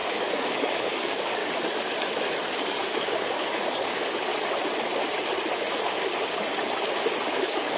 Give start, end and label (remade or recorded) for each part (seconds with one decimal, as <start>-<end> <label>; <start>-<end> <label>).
0.0-1.4 remade; 1.4-2.5 recorded; 2.5-4.3 remade; 4.3-7.3 recorded; 7.3-7.8 remade